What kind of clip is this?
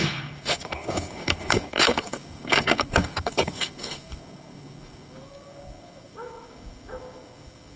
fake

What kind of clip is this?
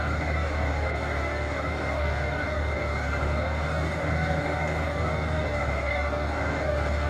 fake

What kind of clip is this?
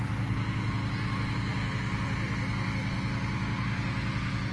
real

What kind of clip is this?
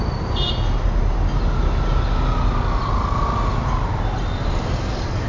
real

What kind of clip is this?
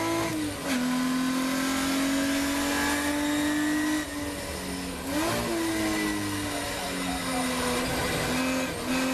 real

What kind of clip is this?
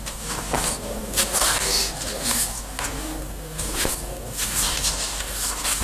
fake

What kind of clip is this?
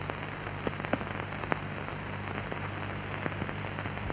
real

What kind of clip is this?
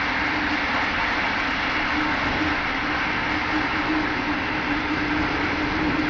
real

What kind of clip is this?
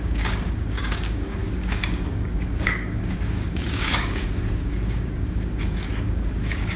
fake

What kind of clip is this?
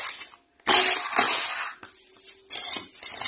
real